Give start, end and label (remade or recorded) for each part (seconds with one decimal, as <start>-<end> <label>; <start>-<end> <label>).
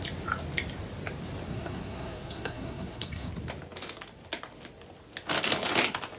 0.0-1.5 recorded; 1.5-3.3 remade; 3.3-6.2 recorded